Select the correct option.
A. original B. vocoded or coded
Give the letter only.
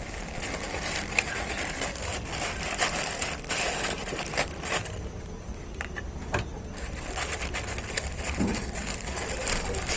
B